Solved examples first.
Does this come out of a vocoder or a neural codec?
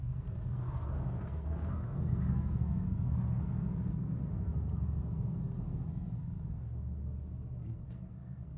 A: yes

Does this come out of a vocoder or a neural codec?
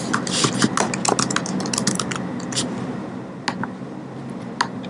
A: no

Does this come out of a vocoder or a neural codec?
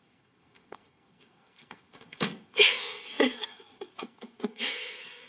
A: yes